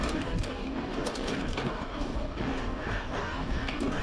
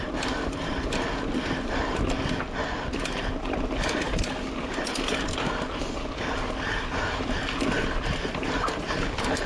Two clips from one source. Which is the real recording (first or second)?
second